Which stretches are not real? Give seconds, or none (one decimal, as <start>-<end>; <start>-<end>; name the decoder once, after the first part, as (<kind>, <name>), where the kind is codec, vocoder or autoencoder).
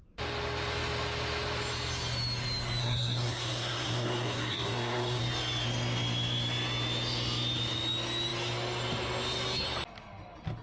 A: 2.8-5.2 (codec, SNAC)